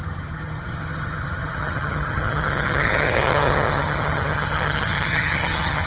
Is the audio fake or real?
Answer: fake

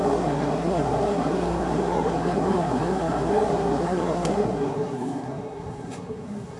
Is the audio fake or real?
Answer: fake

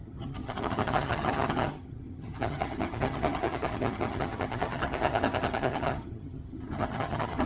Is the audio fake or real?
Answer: fake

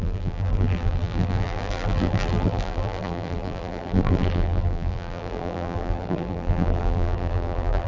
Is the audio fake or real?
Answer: fake